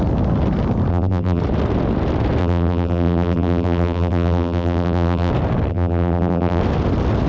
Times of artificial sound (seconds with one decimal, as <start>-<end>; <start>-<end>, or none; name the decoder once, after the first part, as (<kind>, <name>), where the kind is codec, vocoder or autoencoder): 0.9-1.4 (vocoder, BigVGAN v2); 2.4-5.3; 5.7-6.6